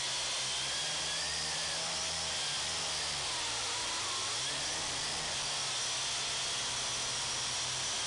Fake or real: real